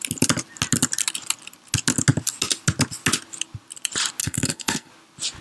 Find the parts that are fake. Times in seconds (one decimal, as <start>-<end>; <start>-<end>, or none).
4.2-4.9